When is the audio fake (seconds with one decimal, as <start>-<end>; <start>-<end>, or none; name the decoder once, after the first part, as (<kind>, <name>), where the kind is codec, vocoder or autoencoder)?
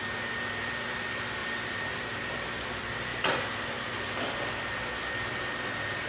1.4-2.2 (vocoder, BigVGAN v2); 3.1-6.1